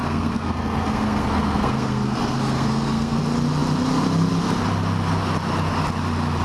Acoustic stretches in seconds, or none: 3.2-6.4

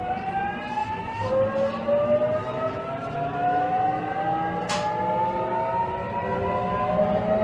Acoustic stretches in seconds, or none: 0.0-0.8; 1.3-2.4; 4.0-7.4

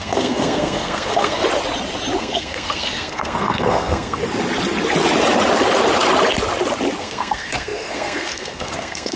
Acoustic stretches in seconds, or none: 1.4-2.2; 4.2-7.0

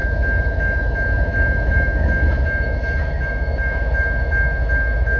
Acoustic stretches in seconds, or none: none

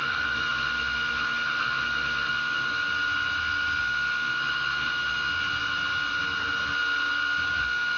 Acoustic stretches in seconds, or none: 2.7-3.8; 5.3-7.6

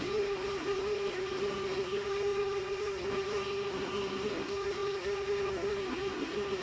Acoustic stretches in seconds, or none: none